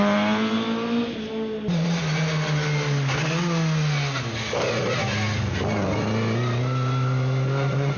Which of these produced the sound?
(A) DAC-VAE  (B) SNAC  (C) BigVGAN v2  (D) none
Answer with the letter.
D